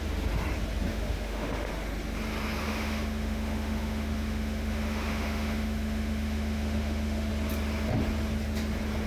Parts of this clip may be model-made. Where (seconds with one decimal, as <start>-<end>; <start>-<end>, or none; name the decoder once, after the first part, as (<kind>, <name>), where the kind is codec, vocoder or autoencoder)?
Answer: 0.9-1.7 (autoencoder, DAC-VAE); 2.6-7.3